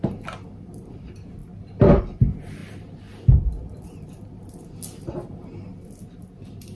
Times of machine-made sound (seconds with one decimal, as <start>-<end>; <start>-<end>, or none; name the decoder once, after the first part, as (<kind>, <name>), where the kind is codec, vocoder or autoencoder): none